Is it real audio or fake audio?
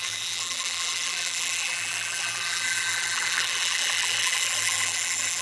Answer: fake